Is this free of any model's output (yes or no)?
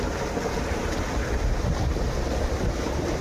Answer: no